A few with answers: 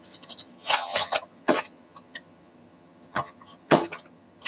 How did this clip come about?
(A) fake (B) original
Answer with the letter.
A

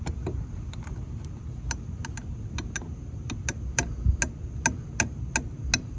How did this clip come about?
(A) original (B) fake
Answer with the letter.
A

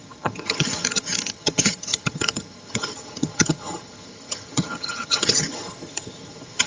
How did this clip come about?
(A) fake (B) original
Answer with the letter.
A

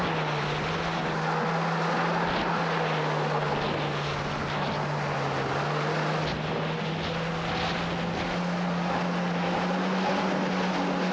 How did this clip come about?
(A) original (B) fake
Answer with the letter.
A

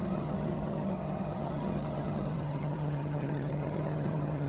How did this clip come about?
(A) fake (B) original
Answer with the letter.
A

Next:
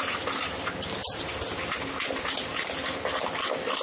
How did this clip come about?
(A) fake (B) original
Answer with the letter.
B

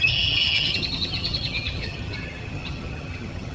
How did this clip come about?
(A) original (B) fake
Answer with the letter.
B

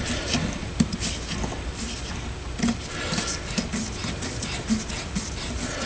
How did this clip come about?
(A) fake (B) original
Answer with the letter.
B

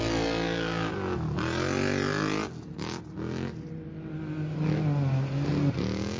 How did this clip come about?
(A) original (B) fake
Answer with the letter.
A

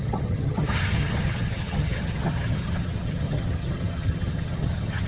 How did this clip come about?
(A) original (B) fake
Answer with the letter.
B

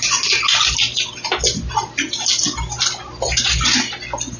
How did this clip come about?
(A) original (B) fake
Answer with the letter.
A